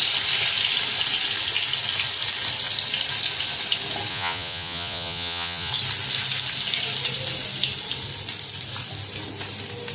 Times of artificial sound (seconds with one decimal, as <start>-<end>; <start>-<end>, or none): 4.1-5.7